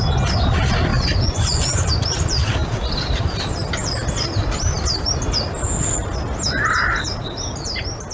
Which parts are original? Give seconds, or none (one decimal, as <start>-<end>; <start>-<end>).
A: 0.0-0.9; 1.9-8.1